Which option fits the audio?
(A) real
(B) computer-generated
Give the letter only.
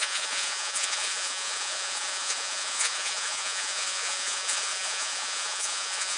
B